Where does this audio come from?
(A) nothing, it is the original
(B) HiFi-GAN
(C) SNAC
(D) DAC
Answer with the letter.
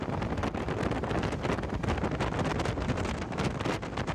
A